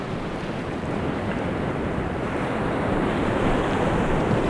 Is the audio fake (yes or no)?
yes